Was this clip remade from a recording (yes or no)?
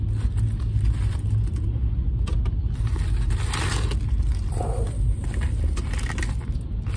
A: no